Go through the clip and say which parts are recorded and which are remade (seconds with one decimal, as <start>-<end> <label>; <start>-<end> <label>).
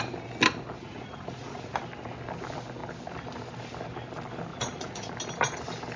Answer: 0.0-0.8 recorded; 0.8-1.8 remade; 1.8-4.5 recorded; 4.5-5.1 remade; 5.1-6.0 recorded